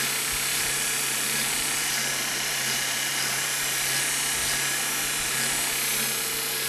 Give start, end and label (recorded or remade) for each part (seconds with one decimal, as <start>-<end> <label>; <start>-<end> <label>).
0.0-0.5 recorded; 0.5-4.0 remade; 4.0-6.7 recorded